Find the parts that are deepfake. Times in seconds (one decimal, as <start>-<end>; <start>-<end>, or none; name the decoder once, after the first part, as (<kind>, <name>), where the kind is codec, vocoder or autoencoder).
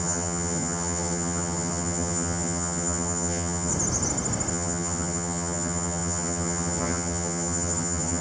0.0-3.7 (vocoder, HiFi-GAN); 4.5-8.2